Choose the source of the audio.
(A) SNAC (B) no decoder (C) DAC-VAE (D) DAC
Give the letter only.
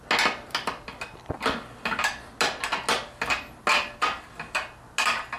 B